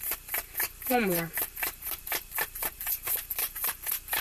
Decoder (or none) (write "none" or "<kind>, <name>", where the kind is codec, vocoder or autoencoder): vocoder, BigVGAN v2